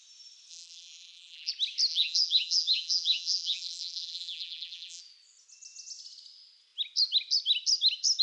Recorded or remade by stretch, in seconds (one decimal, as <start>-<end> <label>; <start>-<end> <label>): 0.0-0.5 recorded; 0.5-1.5 remade; 1.5-1.9 recorded; 1.9-5.0 remade; 5.0-8.2 recorded